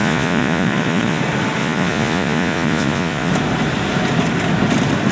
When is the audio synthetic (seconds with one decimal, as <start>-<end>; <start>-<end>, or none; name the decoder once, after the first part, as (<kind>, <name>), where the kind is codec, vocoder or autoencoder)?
0.0-1.2 (vocoder, Vocos); 1.6-3.3